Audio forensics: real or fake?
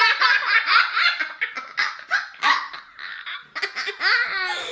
real